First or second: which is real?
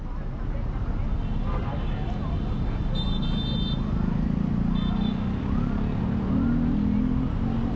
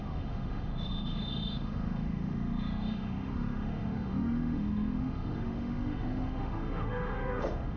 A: first